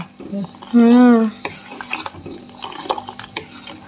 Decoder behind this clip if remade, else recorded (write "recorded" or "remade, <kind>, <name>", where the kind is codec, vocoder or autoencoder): recorded